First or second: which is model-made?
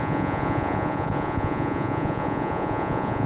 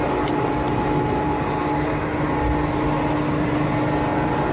first